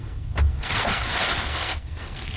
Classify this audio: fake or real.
fake